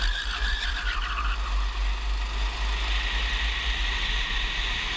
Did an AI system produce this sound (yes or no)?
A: no